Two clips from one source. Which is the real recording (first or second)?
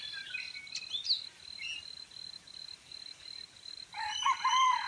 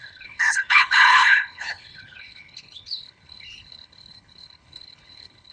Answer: first